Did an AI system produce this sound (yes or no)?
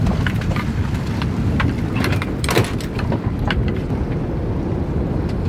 no